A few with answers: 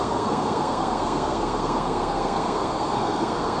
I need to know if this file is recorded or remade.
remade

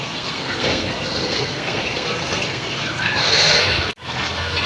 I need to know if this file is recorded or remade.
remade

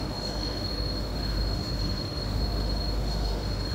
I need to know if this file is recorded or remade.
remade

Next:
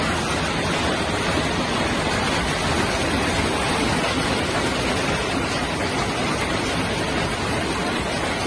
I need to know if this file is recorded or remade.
recorded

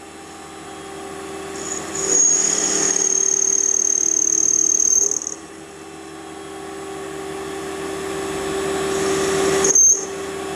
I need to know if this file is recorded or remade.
recorded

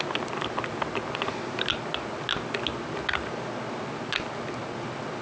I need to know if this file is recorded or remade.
recorded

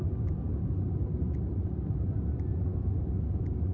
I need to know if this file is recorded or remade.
recorded